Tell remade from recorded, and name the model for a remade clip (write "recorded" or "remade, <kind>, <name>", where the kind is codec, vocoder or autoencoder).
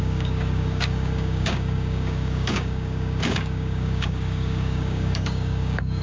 remade, codec, DAC